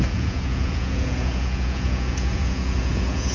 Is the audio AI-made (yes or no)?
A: yes